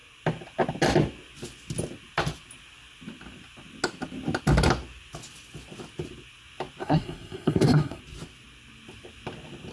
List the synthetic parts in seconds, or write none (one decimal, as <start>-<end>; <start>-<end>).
6.8-8.0

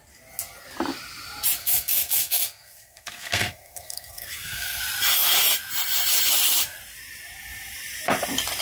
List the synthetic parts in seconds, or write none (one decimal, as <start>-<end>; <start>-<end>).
1.6-4.8

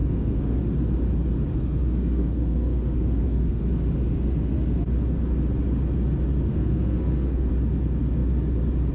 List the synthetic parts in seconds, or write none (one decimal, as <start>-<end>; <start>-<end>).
0.0-0.6; 1.5-3.6; 6.5-7.5

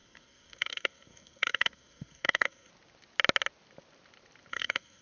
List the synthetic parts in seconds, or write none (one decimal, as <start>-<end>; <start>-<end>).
0.0-2.7; 4.5-5.0

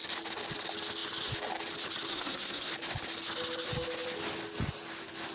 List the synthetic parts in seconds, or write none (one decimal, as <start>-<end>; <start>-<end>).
2.1-2.7

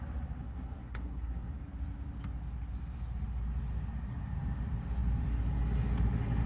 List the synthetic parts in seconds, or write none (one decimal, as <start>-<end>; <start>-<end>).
0.4-1.5

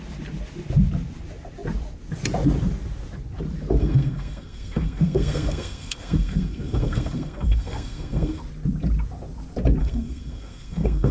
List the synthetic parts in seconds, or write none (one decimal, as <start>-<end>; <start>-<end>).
3.8-8.4; 9.8-11.1

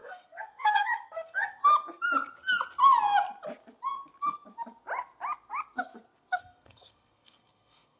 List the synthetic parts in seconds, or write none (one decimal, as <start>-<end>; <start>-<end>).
0.0-1.6; 6.4-8.0